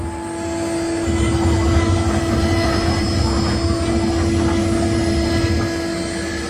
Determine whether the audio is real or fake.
real